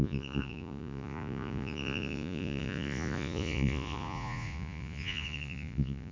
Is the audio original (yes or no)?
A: no